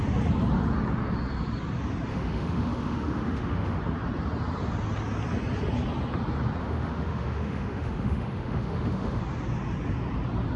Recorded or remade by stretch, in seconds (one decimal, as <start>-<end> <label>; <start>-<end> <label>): 0.0-2.1 recorded; 2.1-3.8 remade; 3.8-6.6 recorded; 6.6-9.2 remade; 9.2-10.6 recorded